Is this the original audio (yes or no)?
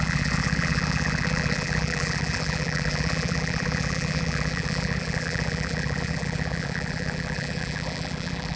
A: no